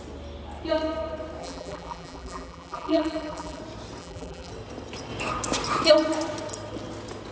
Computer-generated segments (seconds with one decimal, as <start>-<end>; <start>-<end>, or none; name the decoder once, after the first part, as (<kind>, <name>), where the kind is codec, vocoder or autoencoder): 1.4-3.6 (vocoder, BigVGAN v2); 4.0-4.5